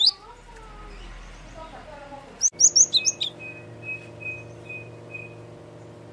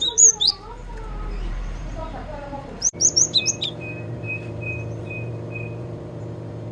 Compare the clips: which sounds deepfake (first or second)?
second